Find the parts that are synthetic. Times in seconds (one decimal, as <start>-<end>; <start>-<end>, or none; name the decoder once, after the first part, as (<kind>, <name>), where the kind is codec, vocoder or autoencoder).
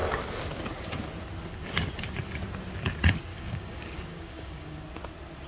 3.3-4.8 (codec, DAC)